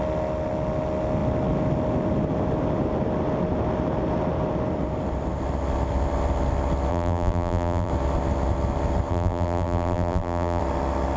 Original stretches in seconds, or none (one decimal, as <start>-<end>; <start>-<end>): 0.0-6.9; 7.9-9.1; 10.6-11.2